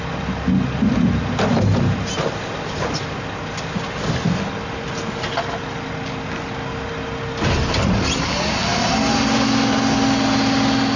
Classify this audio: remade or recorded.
recorded